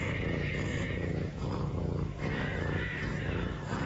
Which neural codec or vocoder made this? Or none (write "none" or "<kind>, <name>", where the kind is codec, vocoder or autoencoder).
autoencoder, DAC-VAE